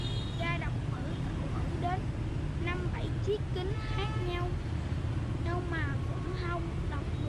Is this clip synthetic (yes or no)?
no